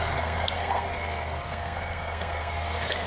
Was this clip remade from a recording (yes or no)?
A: yes